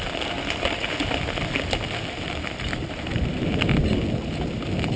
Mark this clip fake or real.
real